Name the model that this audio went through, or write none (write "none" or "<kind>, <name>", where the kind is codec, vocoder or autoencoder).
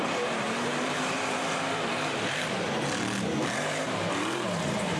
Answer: vocoder, BigVGAN v2